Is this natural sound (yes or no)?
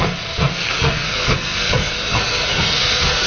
no